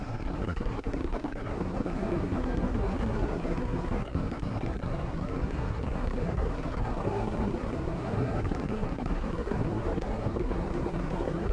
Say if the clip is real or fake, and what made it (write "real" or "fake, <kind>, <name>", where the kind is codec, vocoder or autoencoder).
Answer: fake, codec, SNAC